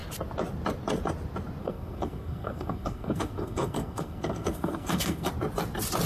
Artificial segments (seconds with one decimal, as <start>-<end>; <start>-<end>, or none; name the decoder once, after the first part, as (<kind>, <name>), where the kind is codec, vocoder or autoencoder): 1.6-5.3 (codec, SNAC)